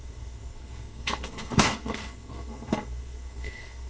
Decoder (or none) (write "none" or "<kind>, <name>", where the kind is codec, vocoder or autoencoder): codec, SNAC